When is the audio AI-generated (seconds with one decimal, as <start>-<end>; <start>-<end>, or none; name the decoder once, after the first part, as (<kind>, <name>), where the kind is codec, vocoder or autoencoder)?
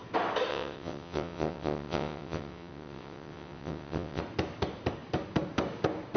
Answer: 0.5-4.2 (vocoder, WaveNeXt)